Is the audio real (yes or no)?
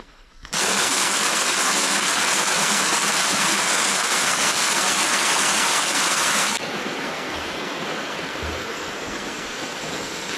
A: no